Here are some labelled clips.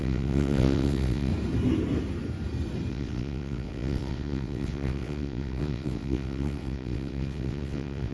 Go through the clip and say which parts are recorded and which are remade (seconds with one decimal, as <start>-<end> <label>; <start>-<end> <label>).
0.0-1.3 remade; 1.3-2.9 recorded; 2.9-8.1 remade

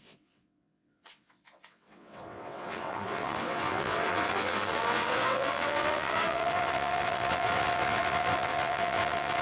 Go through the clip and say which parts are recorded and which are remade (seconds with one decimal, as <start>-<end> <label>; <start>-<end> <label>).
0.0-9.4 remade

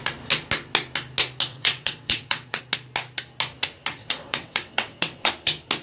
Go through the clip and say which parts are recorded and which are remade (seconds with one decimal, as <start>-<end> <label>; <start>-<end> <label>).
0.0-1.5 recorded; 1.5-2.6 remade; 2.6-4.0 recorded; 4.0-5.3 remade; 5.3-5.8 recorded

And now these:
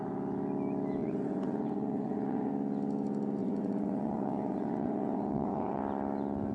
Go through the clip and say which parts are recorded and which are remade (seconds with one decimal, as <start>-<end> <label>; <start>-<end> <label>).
0.0-1.0 recorded; 1.0-2.5 remade; 2.5-3.4 recorded; 3.4-5.8 remade; 5.8-6.5 recorded

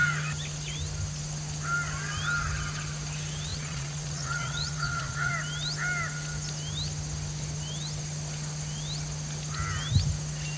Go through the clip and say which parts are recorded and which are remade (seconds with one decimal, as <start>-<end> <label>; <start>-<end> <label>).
0.0-3.5 recorded; 3.5-5.3 remade; 5.3-10.6 recorded

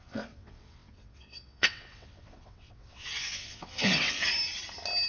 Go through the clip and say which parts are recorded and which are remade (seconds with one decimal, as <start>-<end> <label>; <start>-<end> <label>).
0.0-4.3 remade; 4.3-5.1 recorded

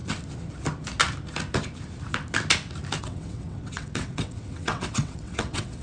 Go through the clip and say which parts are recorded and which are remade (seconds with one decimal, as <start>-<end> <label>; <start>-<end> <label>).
0.0-3.0 recorded; 3.0-5.8 remade

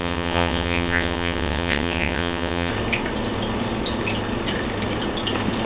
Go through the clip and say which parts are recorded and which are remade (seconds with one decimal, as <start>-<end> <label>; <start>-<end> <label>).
0.0-2.7 remade; 2.7-5.7 recorded